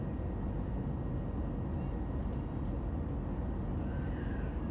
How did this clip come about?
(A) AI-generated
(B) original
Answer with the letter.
B